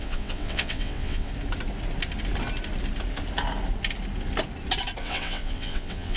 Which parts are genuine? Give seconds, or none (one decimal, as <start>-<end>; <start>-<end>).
1.3-5.0